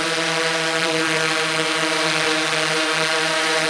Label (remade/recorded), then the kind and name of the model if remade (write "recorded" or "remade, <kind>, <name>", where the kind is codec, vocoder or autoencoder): remade, vocoder, BigVGAN v2